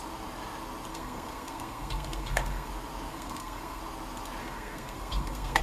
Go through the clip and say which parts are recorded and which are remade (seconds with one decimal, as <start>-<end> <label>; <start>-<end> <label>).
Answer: 0.0-0.9 recorded; 0.9-2.7 remade; 2.7-3.1 recorded; 3.1-3.8 remade; 3.8-4.4 recorded; 4.4-5.6 remade